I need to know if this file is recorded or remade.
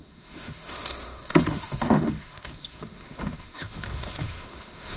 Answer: remade